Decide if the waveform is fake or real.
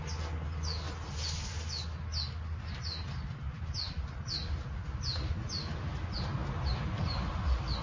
real